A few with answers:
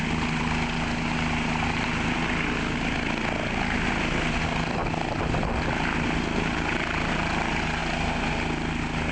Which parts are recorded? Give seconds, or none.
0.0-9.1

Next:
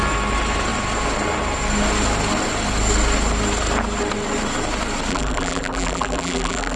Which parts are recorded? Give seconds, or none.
0.0-5.1

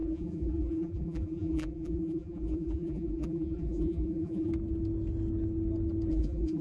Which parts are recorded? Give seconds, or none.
4.5-6.1

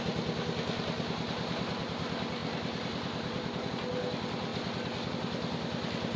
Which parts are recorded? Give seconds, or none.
0.0-2.4; 3.7-6.2

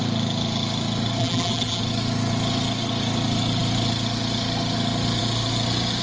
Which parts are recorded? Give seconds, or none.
0.0-1.2; 1.8-6.0

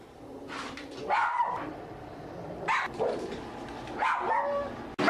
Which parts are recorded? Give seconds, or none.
0.0-1.2; 4.3-5.1